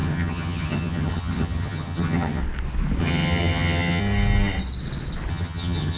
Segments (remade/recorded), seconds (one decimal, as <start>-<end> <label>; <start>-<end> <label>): 0.0-2.4 remade; 2.4-3.0 recorded; 3.0-4.0 remade; 4.0-5.3 recorded; 5.3-6.0 remade